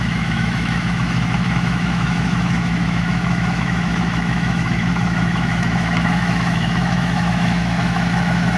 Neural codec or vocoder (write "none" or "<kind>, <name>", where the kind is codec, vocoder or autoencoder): autoencoder, DAC-VAE